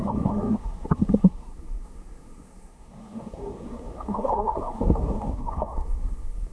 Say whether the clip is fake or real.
fake